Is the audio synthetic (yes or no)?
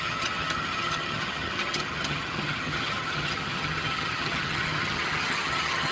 yes